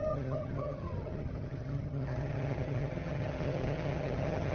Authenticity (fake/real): fake